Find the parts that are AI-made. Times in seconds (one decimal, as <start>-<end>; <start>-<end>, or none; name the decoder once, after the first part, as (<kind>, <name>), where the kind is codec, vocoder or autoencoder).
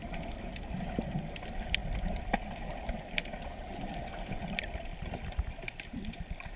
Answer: none